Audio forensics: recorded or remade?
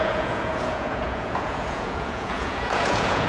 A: remade